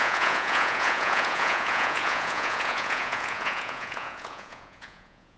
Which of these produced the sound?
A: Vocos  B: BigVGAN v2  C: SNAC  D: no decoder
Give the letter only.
A